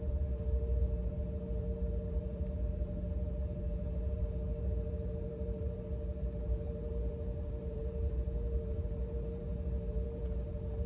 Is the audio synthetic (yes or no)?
yes